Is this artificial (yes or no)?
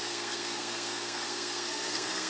yes